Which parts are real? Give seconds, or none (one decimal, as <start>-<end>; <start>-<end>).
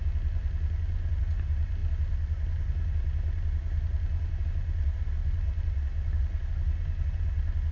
0.0-7.7